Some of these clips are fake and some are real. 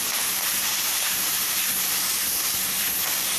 fake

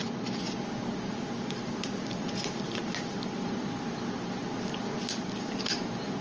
real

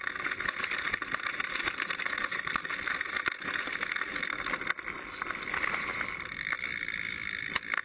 real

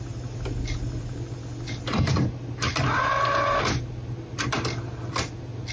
real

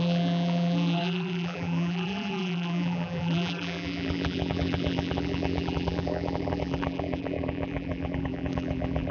fake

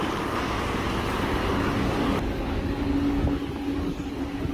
fake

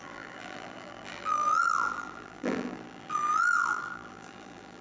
fake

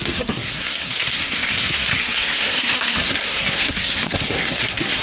fake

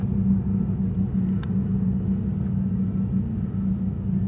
real